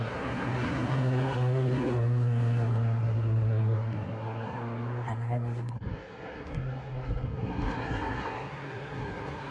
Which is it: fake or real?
fake